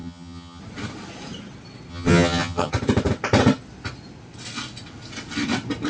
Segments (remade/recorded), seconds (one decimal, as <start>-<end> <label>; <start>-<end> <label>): 0.0-0.6 remade; 0.6-1.9 recorded; 1.9-2.7 remade; 2.7-5.9 recorded